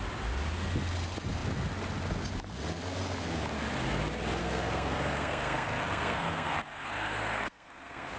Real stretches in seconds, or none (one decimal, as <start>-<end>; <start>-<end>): 0.0-4.4